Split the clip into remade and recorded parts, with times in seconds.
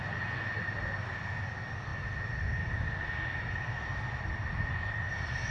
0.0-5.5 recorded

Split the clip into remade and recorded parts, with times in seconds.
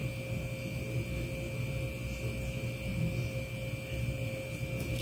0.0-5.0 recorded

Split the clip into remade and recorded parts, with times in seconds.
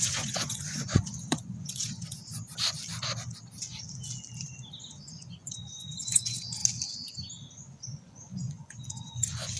0.0-2.2 remade; 2.2-5.0 recorded; 5.0-6.6 remade; 6.6-7.5 recorded; 7.5-9.6 remade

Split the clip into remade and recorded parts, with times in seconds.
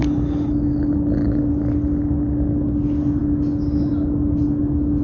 0.0-5.0 recorded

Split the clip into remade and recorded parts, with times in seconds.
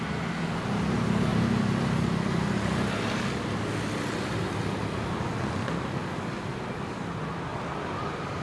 0.0-7.5 recorded; 7.5-8.4 remade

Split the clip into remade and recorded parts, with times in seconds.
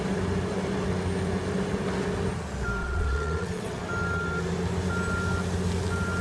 0.0-2.8 recorded; 2.8-3.8 remade; 3.8-6.2 recorded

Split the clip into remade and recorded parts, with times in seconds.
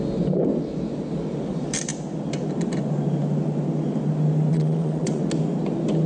0.0-4.5 recorded; 4.5-5.2 remade; 5.2-6.1 recorded